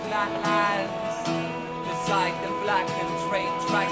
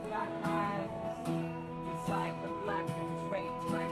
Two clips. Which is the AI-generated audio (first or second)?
second